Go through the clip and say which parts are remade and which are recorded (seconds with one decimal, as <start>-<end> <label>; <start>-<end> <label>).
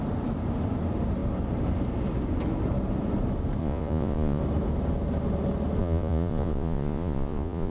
0.0-3.6 recorded; 3.6-4.4 remade; 4.4-5.8 recorded; 5.8-7.7 remade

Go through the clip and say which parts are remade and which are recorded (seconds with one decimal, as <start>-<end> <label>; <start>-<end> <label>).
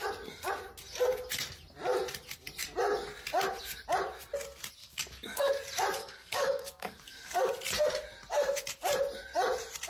0.0-4.8 recorded; 4.8-5.5 remade; 5.5-6.0 recorded; 6.0-7.5 remade; 7.5-9.9 recorded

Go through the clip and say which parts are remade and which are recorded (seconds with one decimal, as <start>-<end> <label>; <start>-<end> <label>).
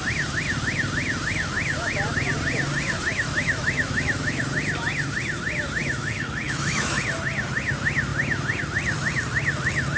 0.0-3.1 recorded; 3.1-4.4 remade; 4.4-5.8 recorded; 5.8-7.0 remade; 7.0-10.0 recorded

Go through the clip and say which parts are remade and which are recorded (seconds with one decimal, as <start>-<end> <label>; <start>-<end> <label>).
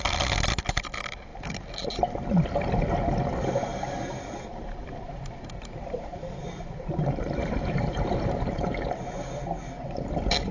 0.0-3.7 recorded; 3.7-8.7 remade; 8.7-10.5 recorded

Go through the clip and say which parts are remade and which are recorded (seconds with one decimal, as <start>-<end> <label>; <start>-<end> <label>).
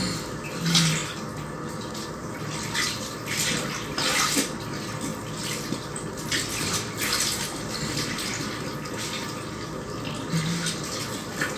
0.0-11.6 recorded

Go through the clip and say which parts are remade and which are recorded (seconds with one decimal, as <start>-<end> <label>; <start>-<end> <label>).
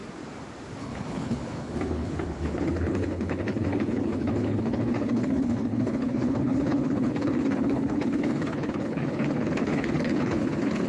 0.0-0.8 recorded; 0.8-10.9 remade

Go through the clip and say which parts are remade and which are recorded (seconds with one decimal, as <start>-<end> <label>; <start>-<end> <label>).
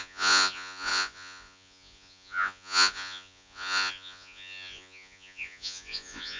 0.0-6.4 remade